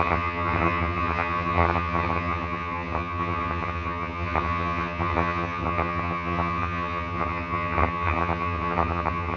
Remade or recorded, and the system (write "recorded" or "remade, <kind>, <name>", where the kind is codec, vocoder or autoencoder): remade, vocoder, HiFi-GAN